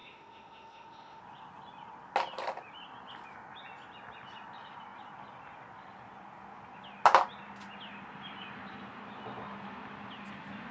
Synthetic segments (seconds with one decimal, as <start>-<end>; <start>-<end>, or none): 0.0-1.2